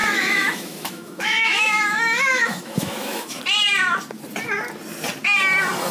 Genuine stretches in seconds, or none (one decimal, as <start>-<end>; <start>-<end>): 3.4-5.9